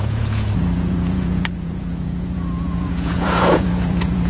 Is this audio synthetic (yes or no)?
yes